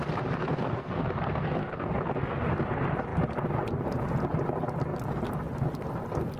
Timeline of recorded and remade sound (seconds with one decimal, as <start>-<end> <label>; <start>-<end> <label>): 0.0-0.5 recorded; 0.5-2.1 remade; 2.1-6.4 recorded